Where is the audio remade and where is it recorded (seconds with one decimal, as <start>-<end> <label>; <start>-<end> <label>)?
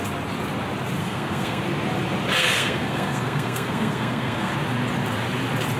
0.0-1.0 recorded; 1.0-1.6 remade; 1.6-2.4 recorded; 2.4-4.5 remade; 4.5-5.8 recorded